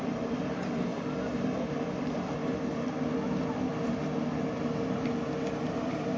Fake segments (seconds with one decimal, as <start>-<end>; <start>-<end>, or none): 0.0-0.9; 1.7-2.4; 5.7-6.2